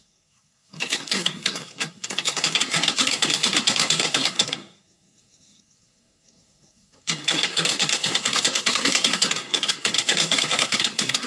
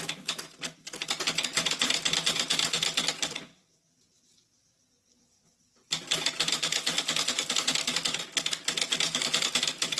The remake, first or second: first